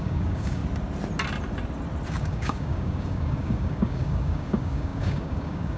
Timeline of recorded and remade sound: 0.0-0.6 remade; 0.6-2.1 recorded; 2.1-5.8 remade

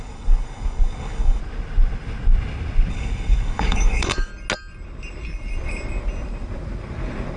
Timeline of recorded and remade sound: 0.0-1.4 remade; 1.4-2.9 recorded; 2.9-4.3 remade; 4.3-7.4 recorded

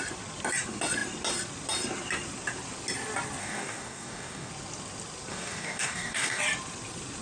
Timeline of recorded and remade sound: 0.0-3.4 recorded; 3.4-4.5 remade; 4.5-5.3 recorded; 5.3-6.4 remade; 6.4-7.2 recorded